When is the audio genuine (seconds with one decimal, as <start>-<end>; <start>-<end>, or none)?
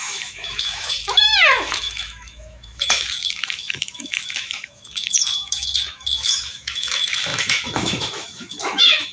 none